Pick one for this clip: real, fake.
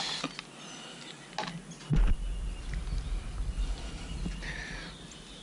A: real